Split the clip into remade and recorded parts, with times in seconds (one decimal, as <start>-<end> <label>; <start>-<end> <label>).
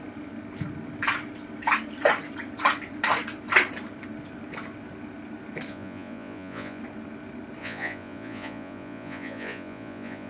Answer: 0.0-5.7 recorded; 5.7-6.8 remade; 6.8-7.6 recorded; 7.6-10.3 remade